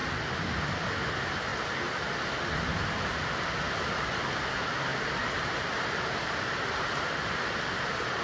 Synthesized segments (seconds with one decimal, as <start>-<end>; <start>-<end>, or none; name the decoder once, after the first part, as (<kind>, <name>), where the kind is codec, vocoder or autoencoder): none